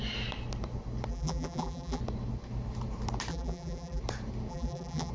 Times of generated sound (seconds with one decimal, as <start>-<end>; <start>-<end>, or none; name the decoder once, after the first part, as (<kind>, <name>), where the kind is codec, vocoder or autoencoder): 1.1-2.0 (vocoder, BigVGAN v2); 3.3-4.0; 4.5-5.1